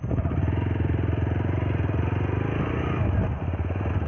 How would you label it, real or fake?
real